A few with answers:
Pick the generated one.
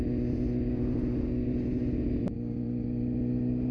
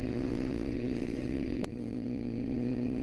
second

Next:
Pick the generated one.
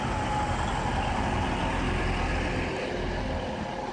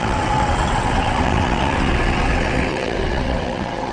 second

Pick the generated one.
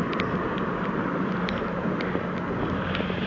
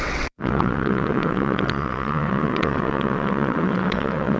second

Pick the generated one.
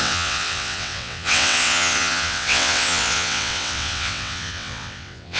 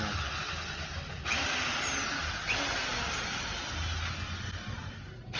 first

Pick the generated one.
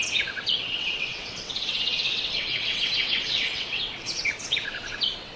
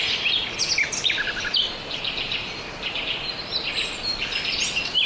first